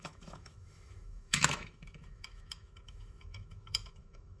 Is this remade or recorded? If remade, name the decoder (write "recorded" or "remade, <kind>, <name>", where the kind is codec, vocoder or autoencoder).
remade, autoencoder, DAC-VAE